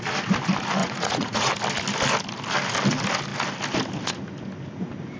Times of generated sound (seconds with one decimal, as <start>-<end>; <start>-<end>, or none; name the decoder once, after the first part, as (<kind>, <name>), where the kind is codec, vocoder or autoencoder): 0.8-1.5 (vocoder, Vocos)